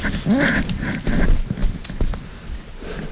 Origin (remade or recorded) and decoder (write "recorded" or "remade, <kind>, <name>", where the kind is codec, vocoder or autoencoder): recorded